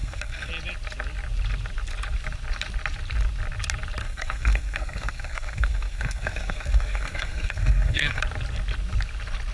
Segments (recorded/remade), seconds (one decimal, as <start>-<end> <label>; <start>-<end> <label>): 0.0-0.5 remade; 0.5-4.0 recorded; 4.0-8.2 remade; 8.2-9.5 recorded